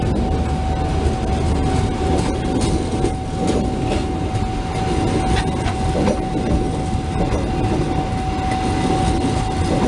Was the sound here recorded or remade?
recorded